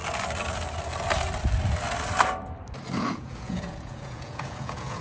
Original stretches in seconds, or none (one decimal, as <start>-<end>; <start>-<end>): 0.0-3.0